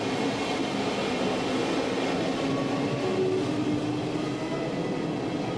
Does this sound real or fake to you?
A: real